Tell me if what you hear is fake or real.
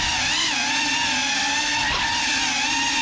real